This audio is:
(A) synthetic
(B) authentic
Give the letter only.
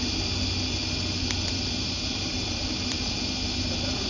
B